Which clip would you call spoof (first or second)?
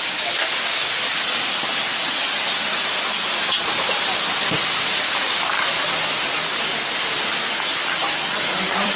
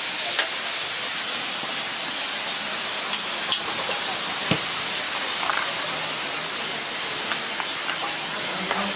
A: first